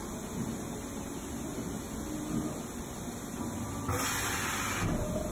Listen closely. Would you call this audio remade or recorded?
recorded